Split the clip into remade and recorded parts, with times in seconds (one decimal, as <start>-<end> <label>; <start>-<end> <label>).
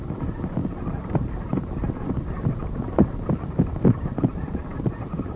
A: 0.0-5.4 recorded